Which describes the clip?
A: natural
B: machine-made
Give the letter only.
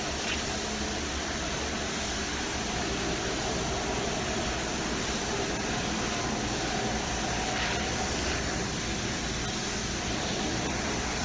A